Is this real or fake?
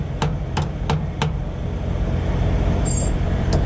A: real